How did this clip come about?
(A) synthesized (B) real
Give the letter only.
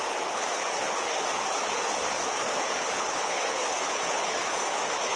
A